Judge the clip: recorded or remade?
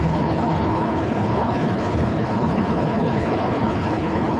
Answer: remade